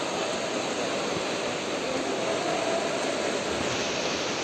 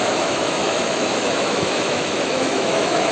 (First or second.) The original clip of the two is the first